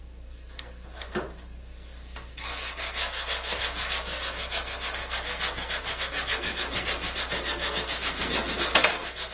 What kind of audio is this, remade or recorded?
remade